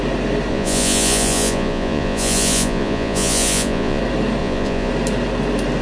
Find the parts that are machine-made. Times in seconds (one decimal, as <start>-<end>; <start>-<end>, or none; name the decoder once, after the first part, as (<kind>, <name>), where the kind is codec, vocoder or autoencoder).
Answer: 0.5-4.0 (vocoder, Vocos); 4.4-4.9